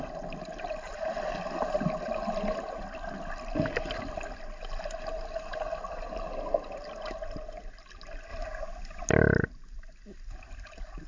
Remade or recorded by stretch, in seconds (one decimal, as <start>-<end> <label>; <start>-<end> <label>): 0.0-11.1 recorded